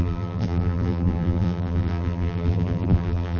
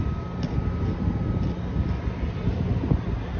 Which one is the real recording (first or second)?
second